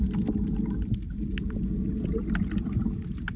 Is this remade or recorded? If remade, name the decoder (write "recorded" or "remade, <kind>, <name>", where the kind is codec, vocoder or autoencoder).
recorded